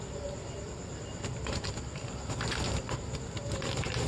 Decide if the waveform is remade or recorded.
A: recorded